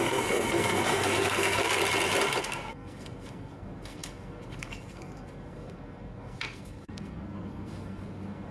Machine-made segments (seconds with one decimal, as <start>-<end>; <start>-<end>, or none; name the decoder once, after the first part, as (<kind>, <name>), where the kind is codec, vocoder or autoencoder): 0.0-1.8 (codec, SNAC); 2.4-8.5